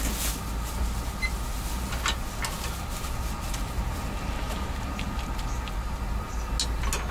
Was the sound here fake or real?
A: real